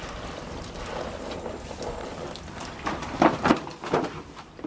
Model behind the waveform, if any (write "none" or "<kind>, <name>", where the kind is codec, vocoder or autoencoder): none